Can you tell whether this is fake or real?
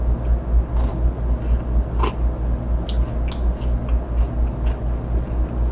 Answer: real